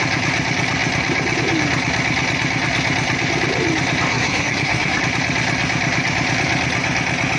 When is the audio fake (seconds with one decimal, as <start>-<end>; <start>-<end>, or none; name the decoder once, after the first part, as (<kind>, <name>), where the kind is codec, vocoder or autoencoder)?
4.1-5.0 (codec, SNAC)